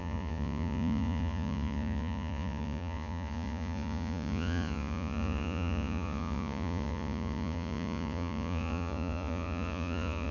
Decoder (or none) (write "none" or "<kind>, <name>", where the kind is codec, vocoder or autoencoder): vocoder, Vocos